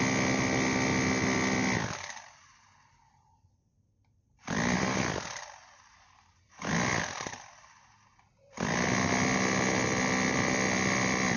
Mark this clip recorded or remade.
recorded